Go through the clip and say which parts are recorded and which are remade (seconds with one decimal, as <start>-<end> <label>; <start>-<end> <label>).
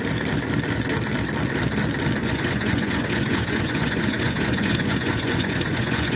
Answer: 0.0-2.2 recorded; 2.2-6.2 remade